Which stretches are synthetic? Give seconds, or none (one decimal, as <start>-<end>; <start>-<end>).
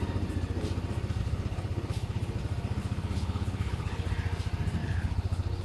1.2-2.4; 2.8-4.1; 4.8-5.6